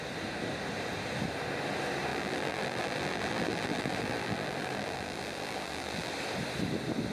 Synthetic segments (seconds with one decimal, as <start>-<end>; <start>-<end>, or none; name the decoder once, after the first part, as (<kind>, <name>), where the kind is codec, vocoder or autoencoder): 2.1-6.1 (vocoder, BigVGAN v2)